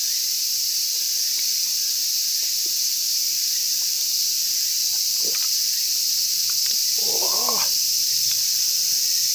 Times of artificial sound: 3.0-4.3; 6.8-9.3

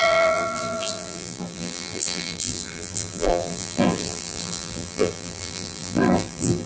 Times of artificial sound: 0.0-6.7

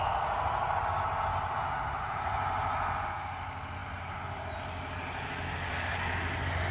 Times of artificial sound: none

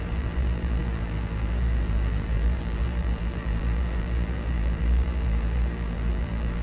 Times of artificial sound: 0.0-6.6